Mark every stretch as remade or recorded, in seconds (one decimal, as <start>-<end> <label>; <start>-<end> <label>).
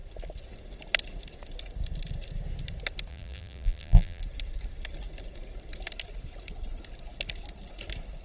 0.0-3.1 recorded; 3.1-4.2 remade; 4.2-8.2 recorded